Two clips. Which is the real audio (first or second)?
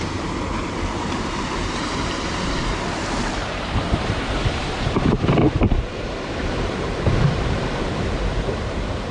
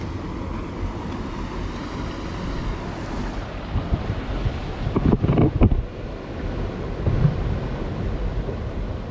second